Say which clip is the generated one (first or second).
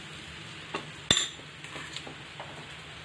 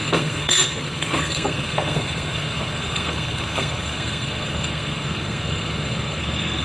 second